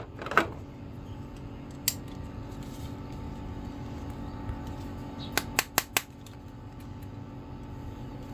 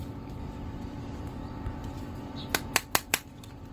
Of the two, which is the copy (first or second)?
second